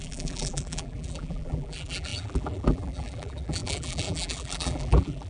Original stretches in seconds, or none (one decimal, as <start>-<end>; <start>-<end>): none